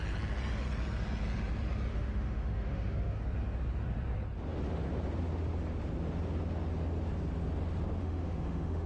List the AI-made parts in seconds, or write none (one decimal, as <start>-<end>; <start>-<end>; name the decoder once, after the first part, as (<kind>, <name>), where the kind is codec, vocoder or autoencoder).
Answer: 1.9-3.2 (autoencoder, DAC-VAE); 8.0-8.9

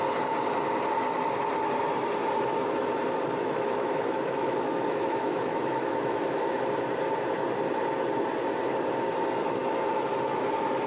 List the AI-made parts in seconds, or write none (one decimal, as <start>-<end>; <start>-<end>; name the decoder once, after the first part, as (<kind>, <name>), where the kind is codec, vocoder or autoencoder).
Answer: 3.4-6.6 (autoencoder, DAC-VAE)

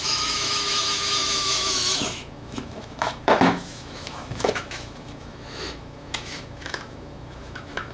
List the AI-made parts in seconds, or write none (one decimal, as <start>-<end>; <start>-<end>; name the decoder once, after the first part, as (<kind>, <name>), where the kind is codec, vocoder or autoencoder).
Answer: 0.0-7.9 (autoencoder, DAC-VAE)

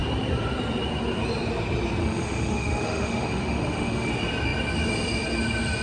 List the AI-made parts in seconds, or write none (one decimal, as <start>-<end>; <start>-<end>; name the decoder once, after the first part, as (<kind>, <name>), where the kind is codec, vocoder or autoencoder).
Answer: 2.0-4.1 (autoencoder, DAC-VAE)

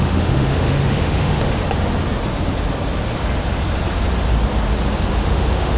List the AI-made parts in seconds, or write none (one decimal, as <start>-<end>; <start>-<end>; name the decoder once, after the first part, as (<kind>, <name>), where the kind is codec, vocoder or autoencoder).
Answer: 0.0-1.6 (autoencoder, DAC-VAE); 5.1-5.8

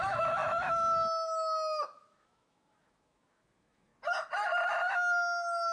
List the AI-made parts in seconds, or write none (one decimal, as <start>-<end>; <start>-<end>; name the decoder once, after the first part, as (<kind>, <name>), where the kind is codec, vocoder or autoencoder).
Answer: 0.0-3.9 (autoencoder, DAC-VAE); 4.9-5.7

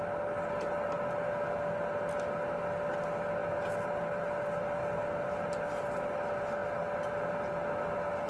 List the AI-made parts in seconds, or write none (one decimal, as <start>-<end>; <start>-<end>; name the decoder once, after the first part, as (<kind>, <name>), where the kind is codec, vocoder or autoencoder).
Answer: none

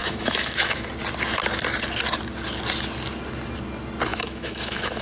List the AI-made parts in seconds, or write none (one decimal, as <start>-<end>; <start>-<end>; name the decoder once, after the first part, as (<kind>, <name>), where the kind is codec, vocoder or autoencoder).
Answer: 0.0-0.9 (autoencoder, DAC-VAE); 4.1-5.0